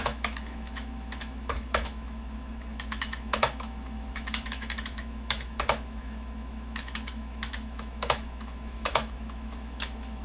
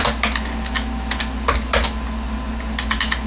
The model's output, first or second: first